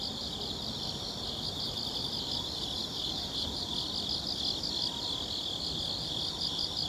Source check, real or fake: real